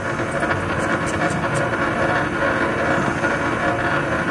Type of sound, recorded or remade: recorded